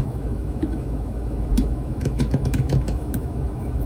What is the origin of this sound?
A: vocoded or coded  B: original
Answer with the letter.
A